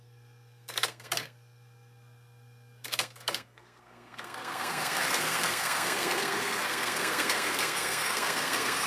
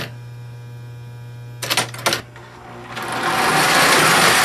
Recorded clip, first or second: second